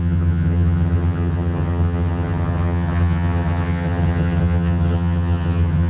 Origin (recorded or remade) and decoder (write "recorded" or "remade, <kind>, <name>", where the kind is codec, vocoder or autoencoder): remade, vocoder, HiFi-GAN